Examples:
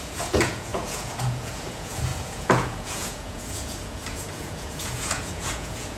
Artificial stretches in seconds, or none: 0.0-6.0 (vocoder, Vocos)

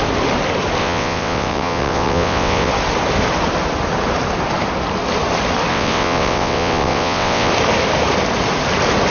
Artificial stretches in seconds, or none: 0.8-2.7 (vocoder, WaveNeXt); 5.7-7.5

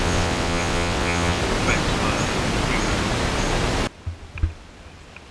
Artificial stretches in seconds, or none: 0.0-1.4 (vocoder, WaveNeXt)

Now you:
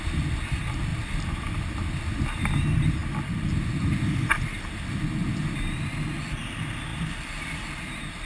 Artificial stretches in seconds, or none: 6.9-7.6 (vocoder, BigVGAN v2)

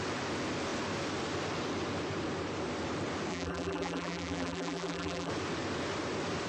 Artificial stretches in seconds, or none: 3.3-5.3 (vocoder, BigVGAN v2)